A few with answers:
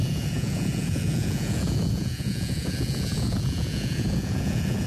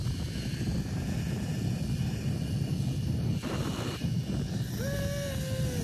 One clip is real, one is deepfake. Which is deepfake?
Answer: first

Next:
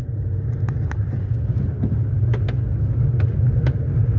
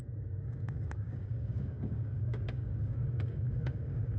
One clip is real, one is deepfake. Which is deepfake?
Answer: second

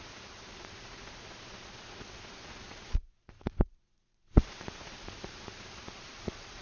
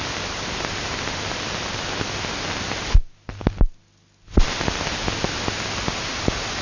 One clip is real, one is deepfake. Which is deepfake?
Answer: first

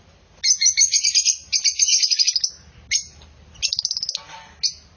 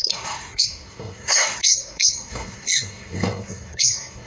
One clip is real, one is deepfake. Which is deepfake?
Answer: second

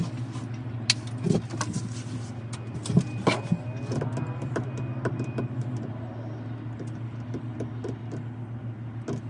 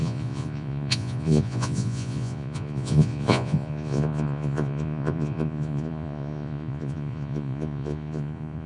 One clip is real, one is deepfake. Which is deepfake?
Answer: second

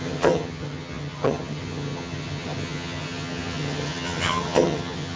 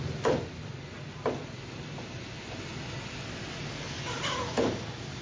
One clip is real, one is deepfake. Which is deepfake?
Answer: first